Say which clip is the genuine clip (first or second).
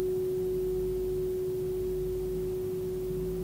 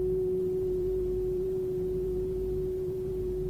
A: first